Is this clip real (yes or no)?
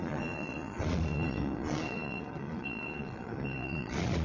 no